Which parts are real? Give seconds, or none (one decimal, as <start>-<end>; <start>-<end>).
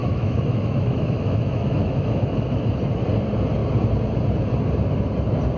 2.7-5.6